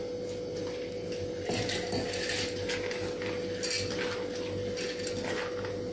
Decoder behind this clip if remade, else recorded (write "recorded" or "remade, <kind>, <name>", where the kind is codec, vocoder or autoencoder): recorded